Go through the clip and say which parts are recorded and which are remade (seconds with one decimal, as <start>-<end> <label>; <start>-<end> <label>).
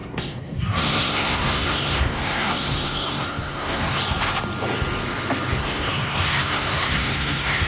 0.0-4.0 remade; 4.0-5.6 recorded; 5.6-7.7 remade